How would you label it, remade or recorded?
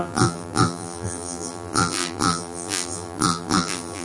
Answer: remade